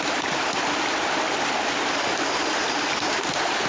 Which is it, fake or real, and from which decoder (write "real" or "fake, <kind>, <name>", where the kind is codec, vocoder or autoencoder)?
fake, vocoder, BigVGAN v2